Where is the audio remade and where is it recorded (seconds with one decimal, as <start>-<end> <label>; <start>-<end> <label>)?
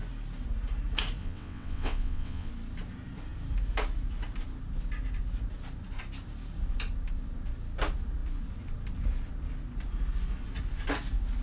0.0-1.2 recorded; 1.2-2.5 remade; 2.5-11.4 recorded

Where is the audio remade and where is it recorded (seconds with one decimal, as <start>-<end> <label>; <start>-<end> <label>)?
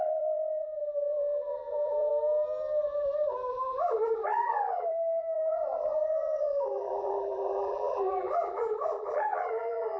0.0-2.1 remade; 2.1-3.5 recorded; 3.5-10.0 remade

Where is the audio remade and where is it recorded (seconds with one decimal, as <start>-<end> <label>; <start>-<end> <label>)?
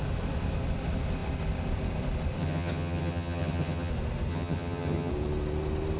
0.0-2.4 recorded; 2.4-3.9 remade; 3.9-4.3 recorded; 4.3-5.1 remade; 5.1-6.0 recorded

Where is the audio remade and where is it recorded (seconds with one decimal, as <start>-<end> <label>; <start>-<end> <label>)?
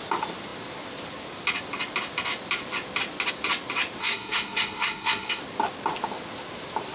0.0-4.0 recorded; 4.0-5.4 remade; 5.4-6.9 recorded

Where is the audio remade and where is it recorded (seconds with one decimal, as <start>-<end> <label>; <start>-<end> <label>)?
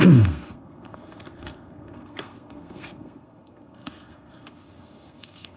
0.0-5.6 remade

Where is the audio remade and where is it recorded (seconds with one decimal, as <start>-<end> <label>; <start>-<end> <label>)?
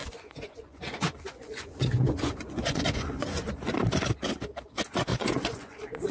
0.0-3.7 remade; 3.7-5.1 recorded; 5.1-6.1 remade